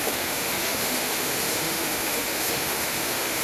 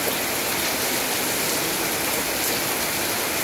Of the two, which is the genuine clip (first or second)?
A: second